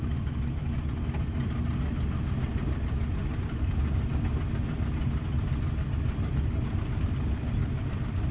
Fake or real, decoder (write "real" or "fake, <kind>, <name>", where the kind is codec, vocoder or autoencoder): real